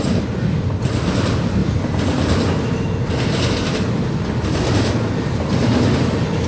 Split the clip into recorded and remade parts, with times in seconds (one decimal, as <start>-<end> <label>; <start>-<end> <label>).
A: 0.0-6.5 recorded